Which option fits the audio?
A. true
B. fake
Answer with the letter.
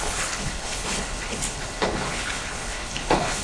B